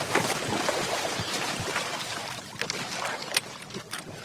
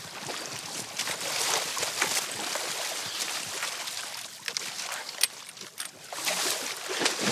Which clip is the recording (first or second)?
second